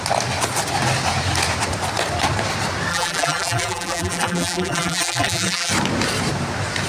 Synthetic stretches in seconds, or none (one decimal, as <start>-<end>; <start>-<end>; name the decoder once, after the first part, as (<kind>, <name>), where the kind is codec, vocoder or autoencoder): 2.9-5.7 (vocoder, BigVGAN v2)